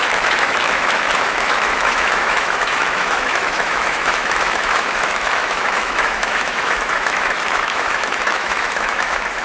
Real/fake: fake